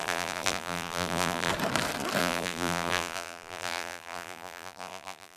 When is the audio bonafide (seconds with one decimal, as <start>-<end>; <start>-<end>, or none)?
1.5-2.2